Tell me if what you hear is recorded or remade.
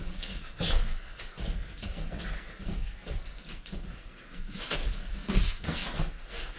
remade